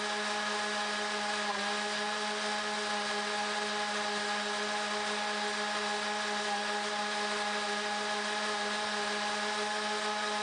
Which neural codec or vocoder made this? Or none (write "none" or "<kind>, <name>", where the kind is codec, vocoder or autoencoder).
none